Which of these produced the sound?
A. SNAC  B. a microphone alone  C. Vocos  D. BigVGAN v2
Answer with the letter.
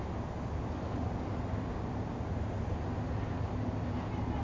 B